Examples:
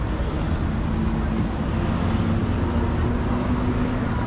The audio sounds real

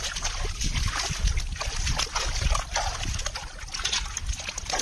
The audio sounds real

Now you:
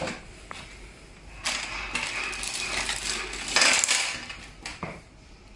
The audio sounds real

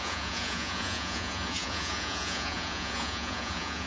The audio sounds fake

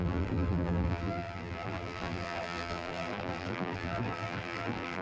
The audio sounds fake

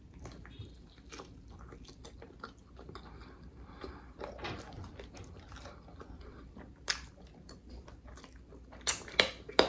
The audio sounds real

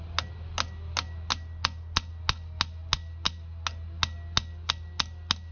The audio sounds real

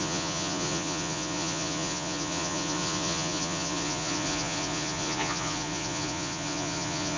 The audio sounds fake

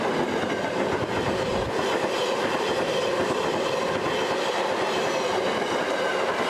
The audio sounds real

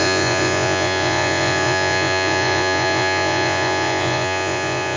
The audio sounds fake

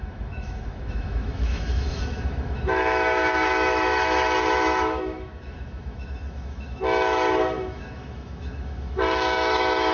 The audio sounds fake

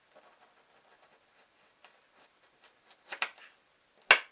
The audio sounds real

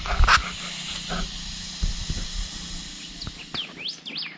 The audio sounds real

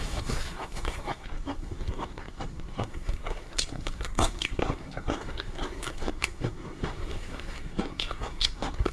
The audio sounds fake